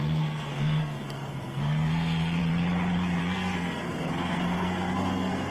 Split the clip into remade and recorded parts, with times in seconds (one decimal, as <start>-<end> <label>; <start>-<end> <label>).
0.0-2.4 remade; 2.4-3.2 recorded; 3.2-5.5 remade